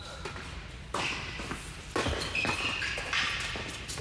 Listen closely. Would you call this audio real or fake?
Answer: real